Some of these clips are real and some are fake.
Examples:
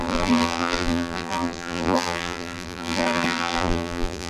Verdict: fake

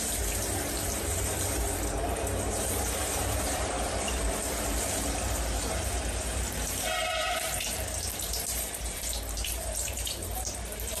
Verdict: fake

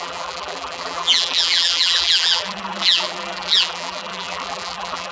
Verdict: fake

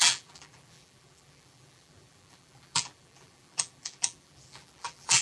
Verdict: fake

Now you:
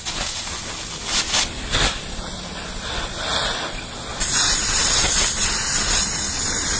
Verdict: real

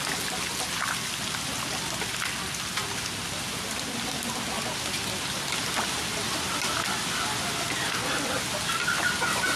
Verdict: real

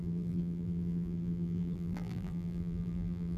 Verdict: fake